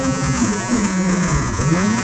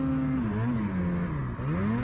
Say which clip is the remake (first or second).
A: first